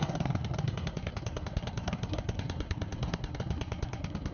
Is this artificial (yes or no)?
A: yes